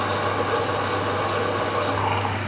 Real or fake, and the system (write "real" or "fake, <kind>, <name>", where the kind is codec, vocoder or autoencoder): real